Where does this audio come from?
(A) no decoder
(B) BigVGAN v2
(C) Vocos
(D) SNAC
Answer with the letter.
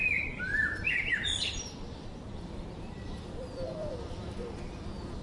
B